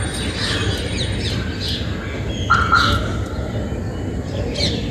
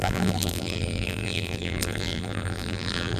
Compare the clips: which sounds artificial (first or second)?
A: second